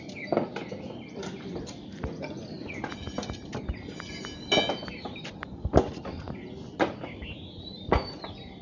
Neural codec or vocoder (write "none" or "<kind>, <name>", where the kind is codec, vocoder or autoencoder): none